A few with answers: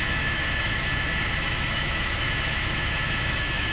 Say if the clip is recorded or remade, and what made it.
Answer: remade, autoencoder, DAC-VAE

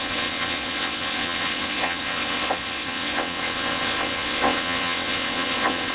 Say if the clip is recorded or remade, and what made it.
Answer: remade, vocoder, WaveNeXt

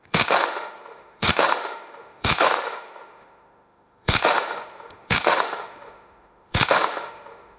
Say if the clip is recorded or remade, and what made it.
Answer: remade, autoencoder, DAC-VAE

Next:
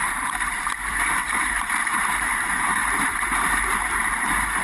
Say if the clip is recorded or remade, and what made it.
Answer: remade, vocoder, BigVGAN v2